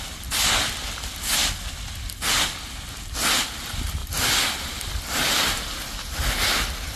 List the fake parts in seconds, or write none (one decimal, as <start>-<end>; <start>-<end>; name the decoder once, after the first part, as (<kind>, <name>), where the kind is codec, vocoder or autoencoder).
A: none